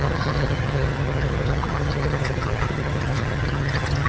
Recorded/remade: remade